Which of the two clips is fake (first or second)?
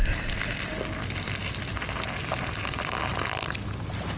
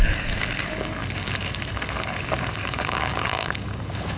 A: second